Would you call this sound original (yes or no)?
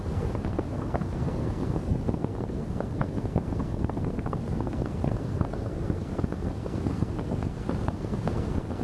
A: no